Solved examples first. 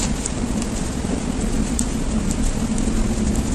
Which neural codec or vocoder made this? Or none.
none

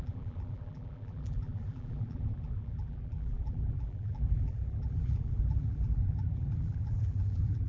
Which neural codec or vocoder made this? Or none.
vocoder, BigVGAN v2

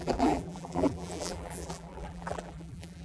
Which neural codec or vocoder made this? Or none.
vocoder, BigVGAN v2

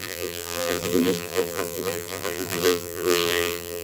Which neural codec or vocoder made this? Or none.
vocoder, BigVGAN v2